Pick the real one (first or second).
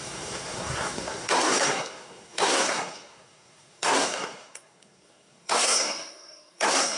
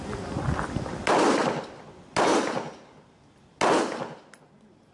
second